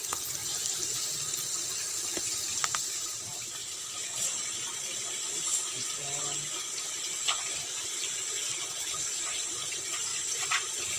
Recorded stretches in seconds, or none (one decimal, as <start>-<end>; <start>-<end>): 0.0-11.0